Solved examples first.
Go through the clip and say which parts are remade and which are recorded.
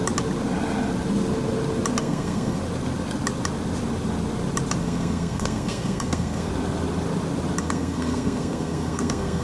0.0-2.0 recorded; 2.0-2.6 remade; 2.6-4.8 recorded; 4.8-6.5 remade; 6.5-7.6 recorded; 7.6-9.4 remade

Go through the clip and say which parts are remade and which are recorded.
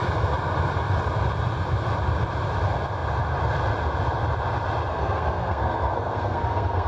0.0-4.9 recorded; 4.9-6.9 remade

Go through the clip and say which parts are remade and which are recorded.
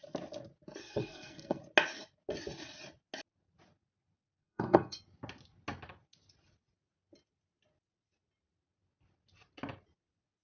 0.0-0.8 recorded; 0.8-1.6 remade; 1.6-4.4 recorded; 4.4-5.0 remade; 5.0-10.4 recorded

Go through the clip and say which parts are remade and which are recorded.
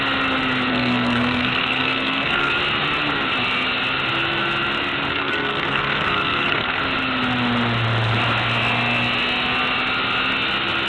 0.0-0.7 recorded; 0.7-2.5 remade; 2.5-5.1 recorded; 5.1-6.8 remade; 6.8-10.9 recorded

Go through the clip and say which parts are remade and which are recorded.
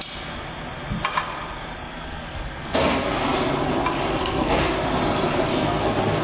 0.0-1.8 recorded; 1.8-3.2 remade; 3.2-4.1 recorded; 4.1-4.9 remade; 4.9-5.5 recorded; 5.5-6.2 remade